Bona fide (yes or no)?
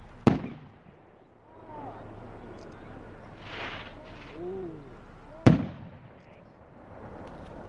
no